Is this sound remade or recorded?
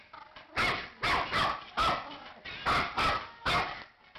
remade